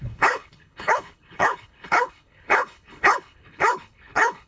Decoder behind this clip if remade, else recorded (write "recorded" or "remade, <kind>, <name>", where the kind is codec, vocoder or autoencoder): remade, codec, HILCodec